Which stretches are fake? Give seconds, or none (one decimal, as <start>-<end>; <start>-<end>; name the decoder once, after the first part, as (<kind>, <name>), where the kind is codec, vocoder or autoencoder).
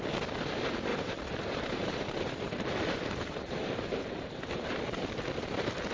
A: 0.9-4.4 (vocoder, BigVGAN v2)